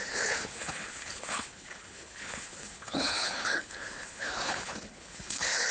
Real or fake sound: fake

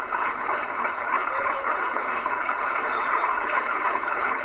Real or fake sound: fake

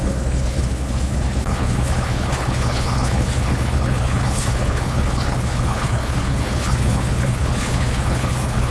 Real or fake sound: fake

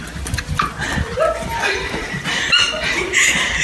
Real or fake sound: real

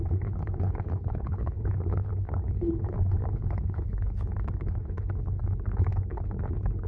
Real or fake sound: fake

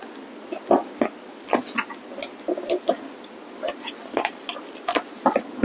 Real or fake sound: real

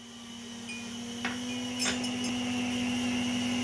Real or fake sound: real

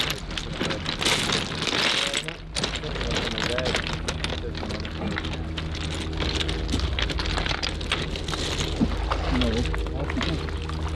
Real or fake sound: real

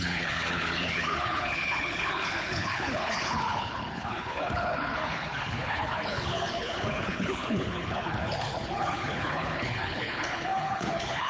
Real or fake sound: fake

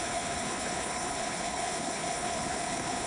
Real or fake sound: fake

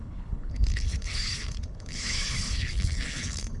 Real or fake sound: fake